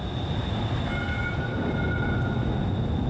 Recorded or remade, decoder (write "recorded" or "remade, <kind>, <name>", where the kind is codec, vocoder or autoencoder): recorded